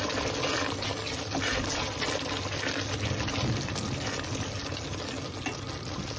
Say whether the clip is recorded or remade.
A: recorded